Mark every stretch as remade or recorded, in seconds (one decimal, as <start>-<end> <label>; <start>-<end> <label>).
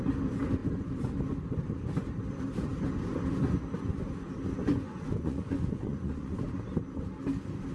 0.0-4.6 recorded; 4.6-6.4 remade; 6.4-7.7 recorded